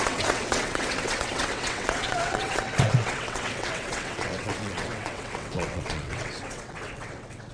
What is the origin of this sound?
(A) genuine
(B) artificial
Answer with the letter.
B